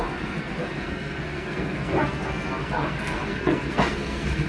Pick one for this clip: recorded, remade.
remade